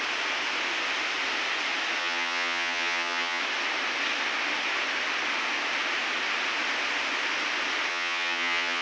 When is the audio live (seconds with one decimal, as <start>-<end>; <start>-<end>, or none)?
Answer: 0.0-2.0; 3.4-7.9